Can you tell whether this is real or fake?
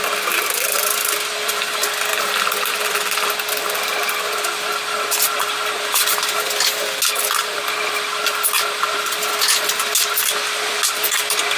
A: real